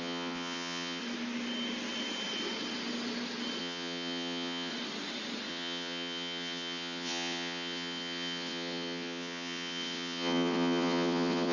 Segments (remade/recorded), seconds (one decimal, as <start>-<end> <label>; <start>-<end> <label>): 0.0-1.0 remade; 1.0-3.6 recorded; 3.6-4.7 remade; 4.7-5.5 recorded; 5.5-11.5 remade